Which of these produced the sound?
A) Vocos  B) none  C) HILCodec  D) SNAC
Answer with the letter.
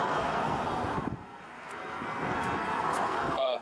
D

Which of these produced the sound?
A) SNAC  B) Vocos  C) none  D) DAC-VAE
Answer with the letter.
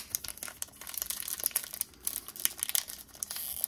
C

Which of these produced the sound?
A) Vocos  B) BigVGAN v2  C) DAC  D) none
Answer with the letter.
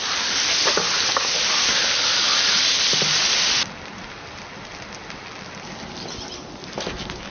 D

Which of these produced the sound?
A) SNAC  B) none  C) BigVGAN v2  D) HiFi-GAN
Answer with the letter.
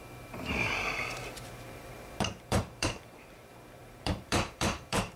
C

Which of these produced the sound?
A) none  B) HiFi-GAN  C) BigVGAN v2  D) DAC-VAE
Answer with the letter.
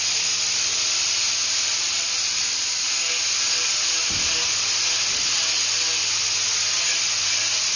A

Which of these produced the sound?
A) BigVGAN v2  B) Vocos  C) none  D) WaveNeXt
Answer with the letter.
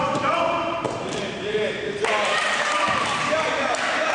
A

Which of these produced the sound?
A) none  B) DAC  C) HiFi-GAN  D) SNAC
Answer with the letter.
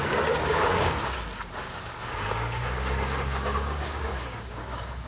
B